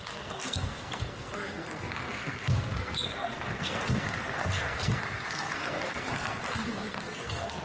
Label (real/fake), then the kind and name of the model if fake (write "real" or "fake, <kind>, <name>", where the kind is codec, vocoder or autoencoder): fake, codec, SNAC